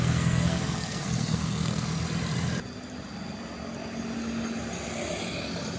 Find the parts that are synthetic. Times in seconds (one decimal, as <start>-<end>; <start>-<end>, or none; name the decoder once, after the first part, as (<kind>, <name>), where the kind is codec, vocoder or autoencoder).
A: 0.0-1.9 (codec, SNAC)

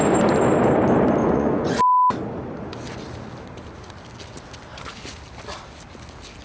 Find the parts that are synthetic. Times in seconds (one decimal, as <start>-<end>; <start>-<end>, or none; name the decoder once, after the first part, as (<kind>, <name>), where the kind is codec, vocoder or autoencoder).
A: 1.2-1.8 (vocoder, Vocos)

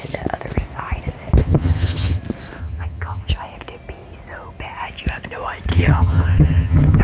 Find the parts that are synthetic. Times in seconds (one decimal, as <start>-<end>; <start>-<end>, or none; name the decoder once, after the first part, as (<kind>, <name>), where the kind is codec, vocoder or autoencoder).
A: 1.4-2.2 (vocoder, HiFi-GAN); 2.6-3.3; 5.7-7.0

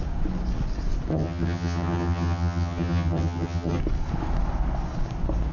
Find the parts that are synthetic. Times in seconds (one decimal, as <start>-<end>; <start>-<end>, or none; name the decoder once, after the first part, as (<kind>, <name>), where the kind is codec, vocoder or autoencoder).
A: 1.1-3.8 (vocoder, HiFi-GAN)